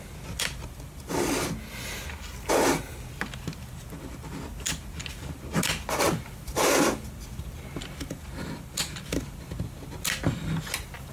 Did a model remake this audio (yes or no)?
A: no